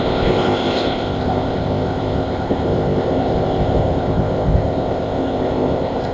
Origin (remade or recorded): remade